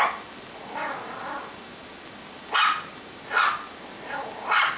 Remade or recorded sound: recorded